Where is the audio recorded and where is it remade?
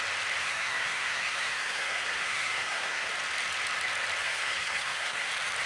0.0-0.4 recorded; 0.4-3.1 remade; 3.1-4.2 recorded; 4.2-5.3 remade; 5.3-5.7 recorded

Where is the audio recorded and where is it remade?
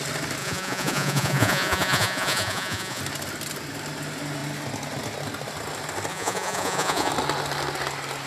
0.0-0.4 recorded; 0.4-3.0 remade; 3.0-6.1 recorded; 6.1-7.1 remade; 7.1-8.3 recorded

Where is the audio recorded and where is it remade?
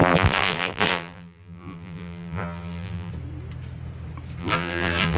0.0-3.1 remade; 3.1-4.4 recorded; 4.4-5.2 remade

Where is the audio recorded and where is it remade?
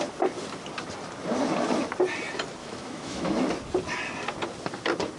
0.0-2.6 recorded; 2.6-3.4 remade; 3.4-5.2 recorded